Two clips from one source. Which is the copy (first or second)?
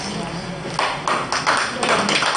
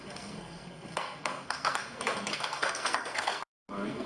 second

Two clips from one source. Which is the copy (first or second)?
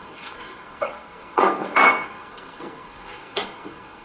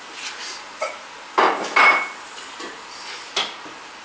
first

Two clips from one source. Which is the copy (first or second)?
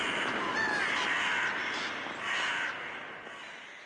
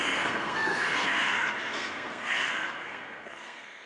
second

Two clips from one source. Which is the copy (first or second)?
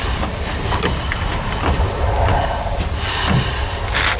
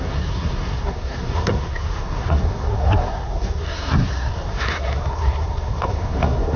second